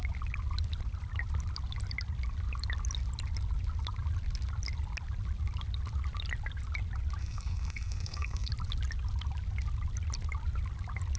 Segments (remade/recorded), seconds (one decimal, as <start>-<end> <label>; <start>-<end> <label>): 0.0-7.2 recorded; 7.2-8.5 remade; 8.5-11.2 recorded